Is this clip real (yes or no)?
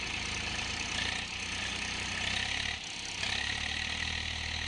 yes